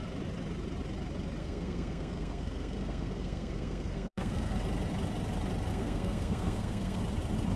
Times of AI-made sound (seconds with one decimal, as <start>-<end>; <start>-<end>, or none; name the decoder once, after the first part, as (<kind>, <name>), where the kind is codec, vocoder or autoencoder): 1.4-4.5 (codec, SNAC); 5.7-7.0